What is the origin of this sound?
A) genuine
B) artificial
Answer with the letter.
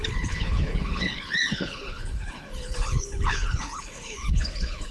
B